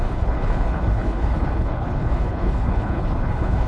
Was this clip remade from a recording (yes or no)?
yes